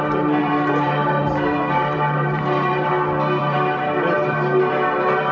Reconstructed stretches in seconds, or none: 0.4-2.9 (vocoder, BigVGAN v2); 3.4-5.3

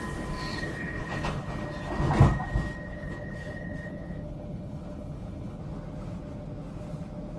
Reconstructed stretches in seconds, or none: 0.5-1.5 (codec, HILCodec); 2.9-5.6

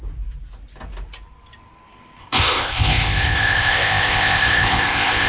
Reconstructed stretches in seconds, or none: 2.2-5.3 (codec, ZipCodec)

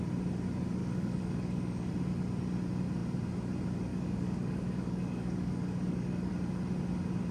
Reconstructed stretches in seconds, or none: 0.8-1.9 (codec, DAC); 3.9-6.3

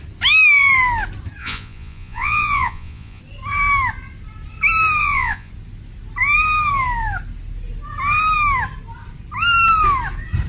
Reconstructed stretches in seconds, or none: 1.4-3.2 (vocoder, Vocos); 5.0-5.5

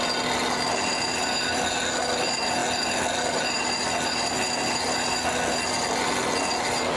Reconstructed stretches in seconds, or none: none

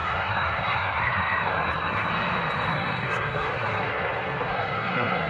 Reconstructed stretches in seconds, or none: 0.0-2.1 (codec, SNAC); 2.7-5.3